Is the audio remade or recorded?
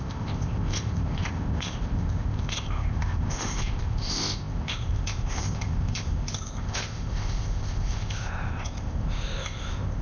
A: remade